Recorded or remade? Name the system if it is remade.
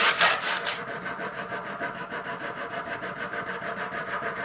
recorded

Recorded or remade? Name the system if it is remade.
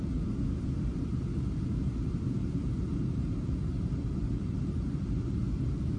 remade, vocoder, BigVGAN v2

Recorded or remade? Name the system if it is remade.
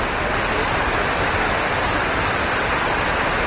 recorded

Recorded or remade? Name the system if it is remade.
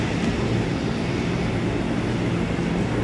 recorded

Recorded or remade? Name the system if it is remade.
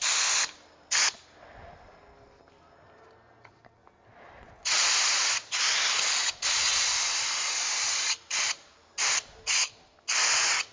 recorded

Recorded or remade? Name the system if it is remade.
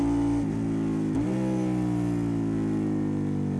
recorded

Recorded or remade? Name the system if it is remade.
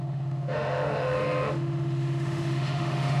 remade, autoencoder, DAC-VAE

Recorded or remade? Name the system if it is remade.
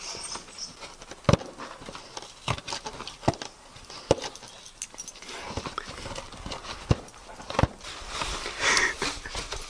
recorded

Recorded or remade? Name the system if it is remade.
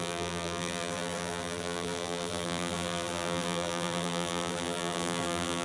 remade, vocoder, BigVGAN v2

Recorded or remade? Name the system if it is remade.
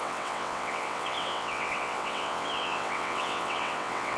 remade, vocoder, WaveNeXt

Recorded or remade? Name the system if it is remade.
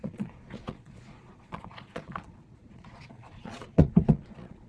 remade, vocoder, Vocos